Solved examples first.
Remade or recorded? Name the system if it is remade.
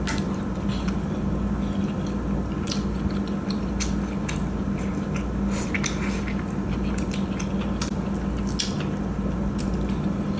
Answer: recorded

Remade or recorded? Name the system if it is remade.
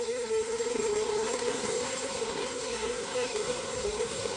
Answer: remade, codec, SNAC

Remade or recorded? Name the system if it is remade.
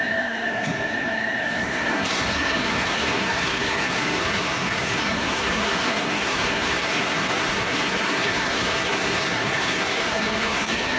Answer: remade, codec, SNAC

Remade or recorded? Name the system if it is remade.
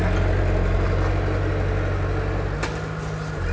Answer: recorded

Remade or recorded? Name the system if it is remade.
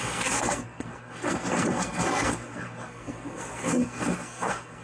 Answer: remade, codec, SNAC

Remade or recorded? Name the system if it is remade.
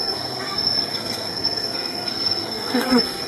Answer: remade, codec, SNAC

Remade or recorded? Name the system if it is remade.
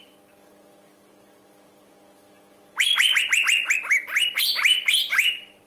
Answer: recorded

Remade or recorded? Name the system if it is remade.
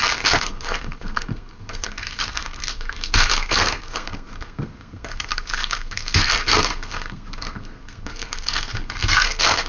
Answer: remade, codec, SNAC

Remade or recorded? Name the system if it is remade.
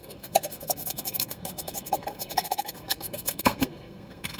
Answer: remade, codec, SNAC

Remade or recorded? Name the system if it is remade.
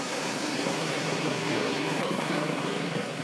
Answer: remade, codec, SNAC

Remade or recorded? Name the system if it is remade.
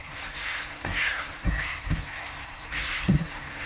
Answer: remade, codec, SNAC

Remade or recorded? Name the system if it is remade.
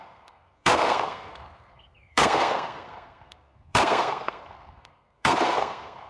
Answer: remade, codec, SNAC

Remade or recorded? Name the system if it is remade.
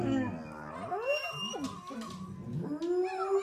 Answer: recorded